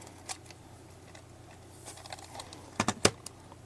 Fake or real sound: real